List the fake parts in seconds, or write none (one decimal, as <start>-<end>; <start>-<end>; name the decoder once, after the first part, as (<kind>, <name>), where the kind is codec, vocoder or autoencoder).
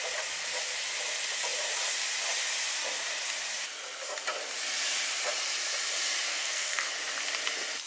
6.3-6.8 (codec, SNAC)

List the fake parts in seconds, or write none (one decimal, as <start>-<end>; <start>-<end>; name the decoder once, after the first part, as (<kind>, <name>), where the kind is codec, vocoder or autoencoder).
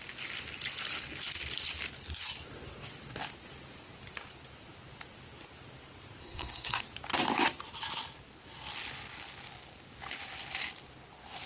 6.2-6.8 (codec, SNAC)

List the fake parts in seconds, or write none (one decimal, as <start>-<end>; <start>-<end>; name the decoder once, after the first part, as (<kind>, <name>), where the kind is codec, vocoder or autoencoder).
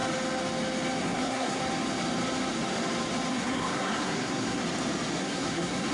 1.0-1.6 (codec, SNAC); 3.3-4.6; 5.2-5.9